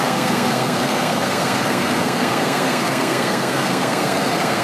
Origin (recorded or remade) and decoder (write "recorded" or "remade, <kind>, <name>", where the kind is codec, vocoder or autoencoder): remade, codec, SNAC